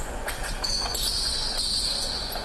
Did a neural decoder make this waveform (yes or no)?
yes